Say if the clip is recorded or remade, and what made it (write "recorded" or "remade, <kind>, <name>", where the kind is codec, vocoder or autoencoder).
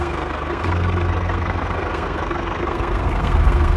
remade, codec, SNAC